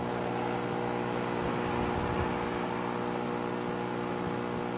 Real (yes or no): yes